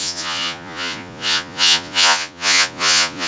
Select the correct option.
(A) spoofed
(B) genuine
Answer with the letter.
A